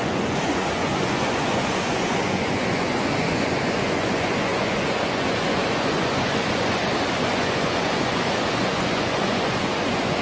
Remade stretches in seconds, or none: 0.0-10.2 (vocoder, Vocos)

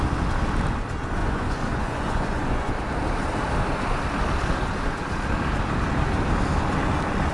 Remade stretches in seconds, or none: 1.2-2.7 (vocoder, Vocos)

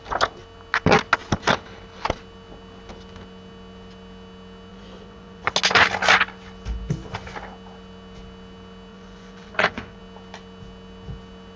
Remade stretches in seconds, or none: 4.7-5.5 (vocoder, Vocos); 8.9-10.0